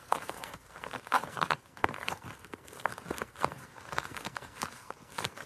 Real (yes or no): no